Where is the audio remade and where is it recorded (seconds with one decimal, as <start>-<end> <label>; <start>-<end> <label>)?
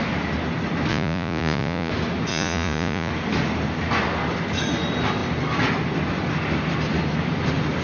0.0-0.9 recorded; 0.9-1.9 remade; 1.9-2.3 recorded; 2.3-3.1 remade; 3.1-7.8 recorded